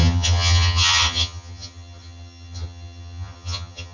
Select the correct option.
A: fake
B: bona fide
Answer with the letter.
A